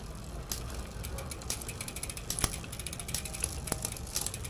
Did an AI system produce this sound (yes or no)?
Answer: no